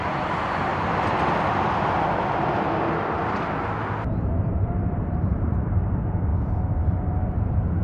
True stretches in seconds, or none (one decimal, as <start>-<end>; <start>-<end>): 0.7-4.4; 6.3-7.2